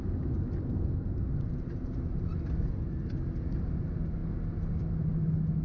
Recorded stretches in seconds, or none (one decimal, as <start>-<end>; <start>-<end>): 0.0-5.6